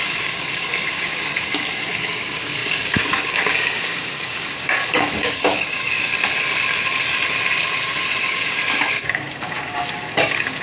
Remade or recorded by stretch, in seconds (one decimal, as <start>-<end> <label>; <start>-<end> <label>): 0.0-6.1 remade; 6.1-8.2 recorded; 8.2-10.6 remade